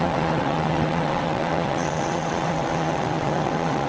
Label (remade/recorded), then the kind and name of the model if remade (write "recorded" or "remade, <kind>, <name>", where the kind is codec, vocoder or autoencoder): remade, vocoder, WaveNeXt